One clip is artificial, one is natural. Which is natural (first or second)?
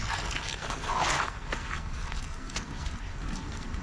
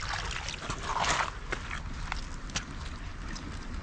second